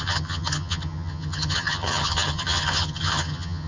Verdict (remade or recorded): remade